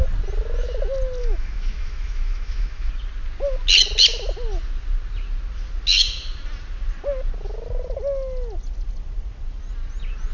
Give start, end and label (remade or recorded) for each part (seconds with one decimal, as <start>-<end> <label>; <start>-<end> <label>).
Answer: 0.0-1.2 recorded; 1.2-2.9 remade; 2.9-10.3 recorded